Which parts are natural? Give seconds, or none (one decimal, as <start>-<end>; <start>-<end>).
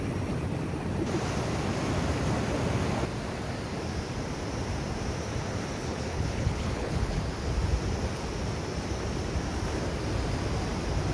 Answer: 0.0-5.8; 7.2-11.1